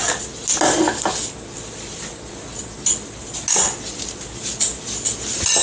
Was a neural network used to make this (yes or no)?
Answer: no